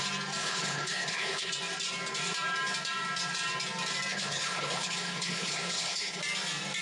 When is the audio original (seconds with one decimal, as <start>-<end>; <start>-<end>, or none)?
0.0-0.4; 1.5-4.1; 6.2-6.8